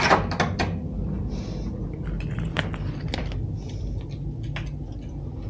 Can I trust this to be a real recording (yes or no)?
yes